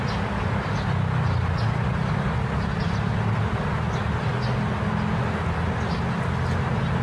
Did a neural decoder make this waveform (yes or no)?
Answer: no